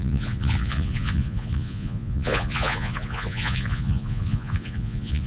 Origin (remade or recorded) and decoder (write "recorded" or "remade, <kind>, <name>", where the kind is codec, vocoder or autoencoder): remade, vocoder, Vocos